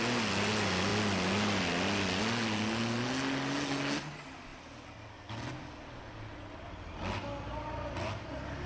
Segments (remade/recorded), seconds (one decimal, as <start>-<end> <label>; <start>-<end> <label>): 0.0-8.7 recorded